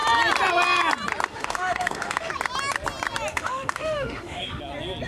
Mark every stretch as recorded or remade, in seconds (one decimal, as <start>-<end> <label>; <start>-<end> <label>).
0.0-1.3 recorded; 1.3-2.3 remade; 2.3-3.3 recorded; 3.3-4.6 remade; 4.6-5.1 recorded